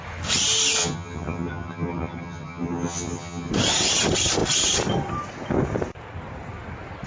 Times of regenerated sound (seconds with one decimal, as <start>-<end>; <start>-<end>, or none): 0.8-3.5